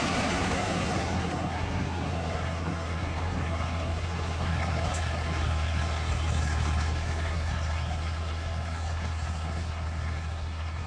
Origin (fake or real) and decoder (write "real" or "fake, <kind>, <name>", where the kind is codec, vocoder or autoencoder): fake, codec, SNAC